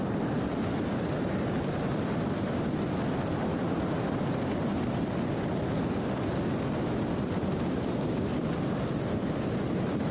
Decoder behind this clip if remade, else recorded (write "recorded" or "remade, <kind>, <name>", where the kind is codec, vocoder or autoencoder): recorded